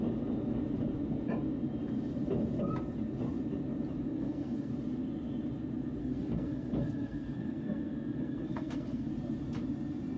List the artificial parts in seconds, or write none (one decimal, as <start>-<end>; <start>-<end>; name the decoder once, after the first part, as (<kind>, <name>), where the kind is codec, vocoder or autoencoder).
4.1-4.7 (codec, SNAC); 6.0-9.1